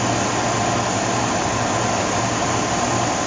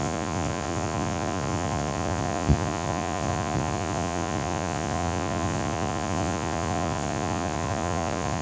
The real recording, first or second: first